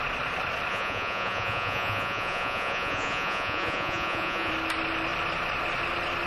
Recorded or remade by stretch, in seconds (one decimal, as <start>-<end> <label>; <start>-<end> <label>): 0.0-0.7 recorded; 0.7-4.5 remade; 4.5-6.3 recorded